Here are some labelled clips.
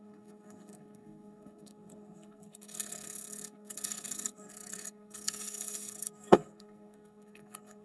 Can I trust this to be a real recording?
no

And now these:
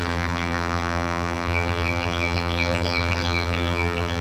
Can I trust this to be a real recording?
no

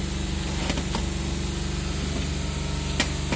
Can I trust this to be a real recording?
yes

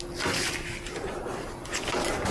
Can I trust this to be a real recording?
yes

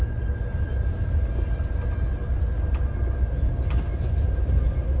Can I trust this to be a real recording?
yes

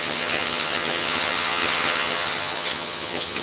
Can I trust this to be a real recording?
no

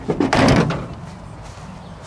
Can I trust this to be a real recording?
yes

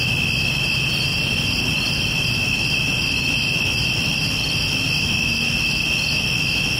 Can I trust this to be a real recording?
yes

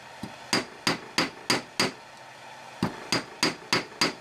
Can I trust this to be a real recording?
yes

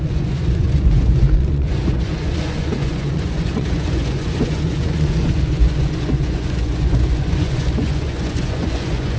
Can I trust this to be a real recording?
no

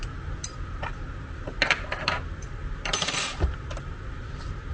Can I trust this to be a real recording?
no